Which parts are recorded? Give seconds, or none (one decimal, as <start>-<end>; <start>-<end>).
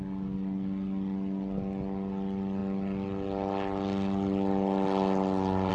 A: 0.0-5.7